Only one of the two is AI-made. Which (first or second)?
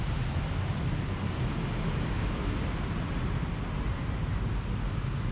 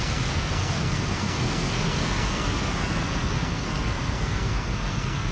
second